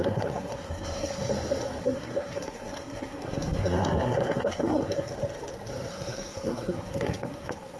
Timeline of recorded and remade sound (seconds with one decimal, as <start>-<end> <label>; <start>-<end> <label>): 0.0-1.3 remade; 1.3-1.8 recorded; 1.8-5.1 remade; 5.1-5.9 recorded; 5.9-7.8 remade